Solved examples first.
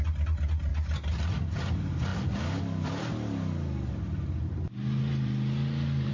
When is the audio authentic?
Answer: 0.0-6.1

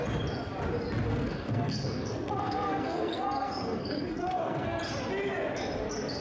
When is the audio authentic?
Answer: 0.0-1.1; 4.8-6.2

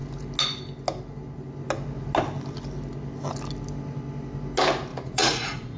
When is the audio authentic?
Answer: 0.0-4.9

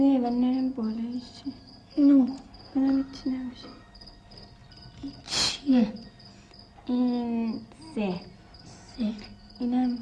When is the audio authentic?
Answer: 0.0-10.0

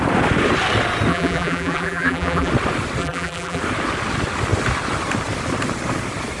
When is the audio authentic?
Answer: 0.0-1.1; 2.5-3.0; 3.6-6.4

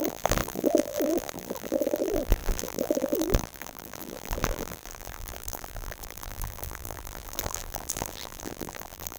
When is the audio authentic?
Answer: none

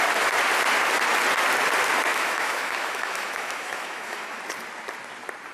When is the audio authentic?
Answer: 0.0-2.1; 4.4-5.5

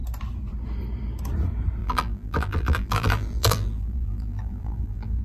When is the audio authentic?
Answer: 0.0-1.8